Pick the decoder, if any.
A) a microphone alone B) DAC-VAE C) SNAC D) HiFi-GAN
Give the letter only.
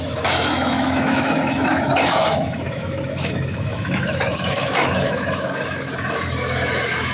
B